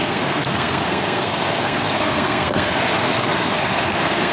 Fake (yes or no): yes